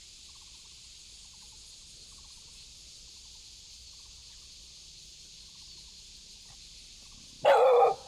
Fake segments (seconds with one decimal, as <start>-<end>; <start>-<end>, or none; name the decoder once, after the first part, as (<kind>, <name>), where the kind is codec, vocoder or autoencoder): none